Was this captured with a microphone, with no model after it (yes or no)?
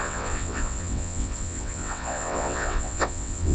no